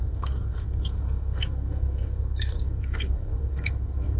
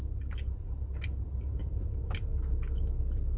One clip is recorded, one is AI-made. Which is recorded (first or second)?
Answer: second